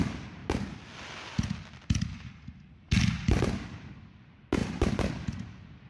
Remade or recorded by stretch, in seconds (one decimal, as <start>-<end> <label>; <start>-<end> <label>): 0.0-5.9 recorded